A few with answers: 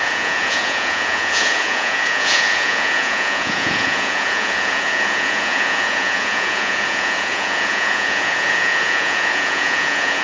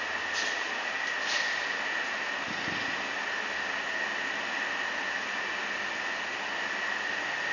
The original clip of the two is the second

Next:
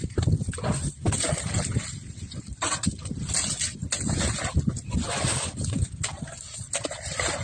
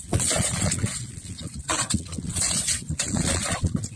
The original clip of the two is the first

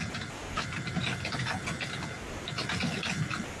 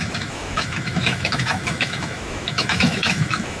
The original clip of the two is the first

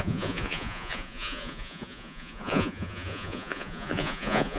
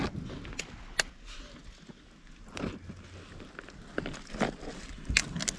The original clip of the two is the second